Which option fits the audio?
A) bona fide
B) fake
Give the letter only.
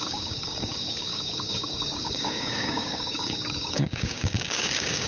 B